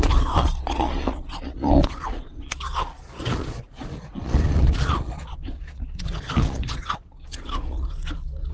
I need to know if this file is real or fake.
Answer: fake